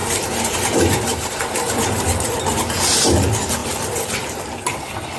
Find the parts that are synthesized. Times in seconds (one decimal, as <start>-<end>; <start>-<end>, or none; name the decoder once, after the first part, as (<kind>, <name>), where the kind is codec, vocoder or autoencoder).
0.0-3.1 (vocoder, BigVGAN v2)